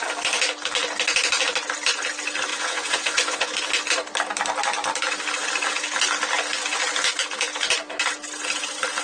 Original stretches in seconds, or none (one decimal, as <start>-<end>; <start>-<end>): 0.0-2.5; 3.5-9.0